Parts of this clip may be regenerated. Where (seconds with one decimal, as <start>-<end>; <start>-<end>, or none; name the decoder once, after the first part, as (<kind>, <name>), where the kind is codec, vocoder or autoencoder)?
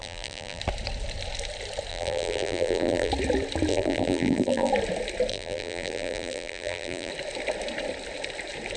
0.0-0.6 (vocoder, BigVGAN v2); 1.9-3.1; 3.7-4.7; 5.3-7.1